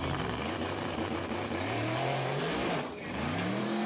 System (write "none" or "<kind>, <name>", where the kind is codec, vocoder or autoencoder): vocoder, BigVGAN v2